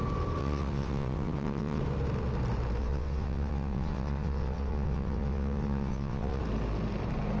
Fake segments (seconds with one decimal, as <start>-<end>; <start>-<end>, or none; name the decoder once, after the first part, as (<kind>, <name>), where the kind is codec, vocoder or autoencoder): 0.4-1.8 (vocoder, WaveNeXt); 2.8-6.4

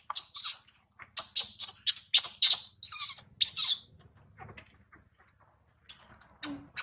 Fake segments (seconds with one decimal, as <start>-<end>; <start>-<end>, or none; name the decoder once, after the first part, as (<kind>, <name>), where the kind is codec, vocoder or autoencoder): none

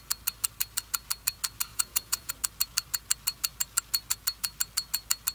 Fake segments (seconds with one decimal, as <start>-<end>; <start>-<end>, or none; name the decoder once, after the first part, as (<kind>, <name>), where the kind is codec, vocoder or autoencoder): 1.7-2.3 (vocoder, Vocos)

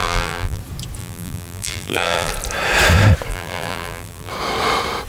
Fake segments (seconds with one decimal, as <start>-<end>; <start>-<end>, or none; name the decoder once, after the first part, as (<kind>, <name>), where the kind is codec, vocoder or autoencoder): 0.0-0.6 (vocoder, BigVGAN v2); 1.0-2.3; 3.3-4.3

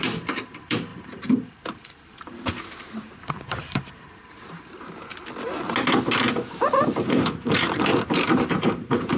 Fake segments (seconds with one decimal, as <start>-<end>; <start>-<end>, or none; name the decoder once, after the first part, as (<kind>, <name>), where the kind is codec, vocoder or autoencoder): 0.0-5.1 (vocoder, BigVGAN v2); 6.6-9.2

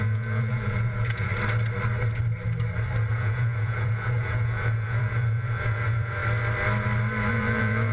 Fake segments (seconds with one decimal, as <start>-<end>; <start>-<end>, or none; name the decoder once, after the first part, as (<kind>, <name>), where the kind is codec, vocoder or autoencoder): 0.0-1.3 (vocoder, Vocos); 3.1-6.2; 7.3-7.9

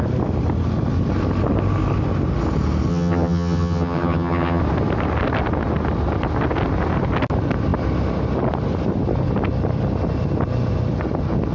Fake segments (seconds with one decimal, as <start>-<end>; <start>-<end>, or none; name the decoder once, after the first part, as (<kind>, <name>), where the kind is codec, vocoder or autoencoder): 2.9-4.6 (vocoder, HiFi-GAN)

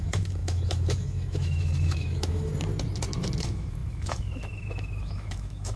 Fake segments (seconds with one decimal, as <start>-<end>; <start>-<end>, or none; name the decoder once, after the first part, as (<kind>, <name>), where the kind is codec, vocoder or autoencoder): 0.0-2.5 (autoencoder, DAC-VAE); 3.4-5.8